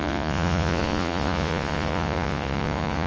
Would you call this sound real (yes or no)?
no